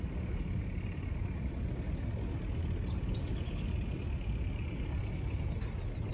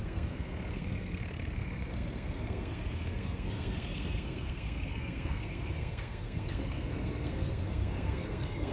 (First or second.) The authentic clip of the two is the first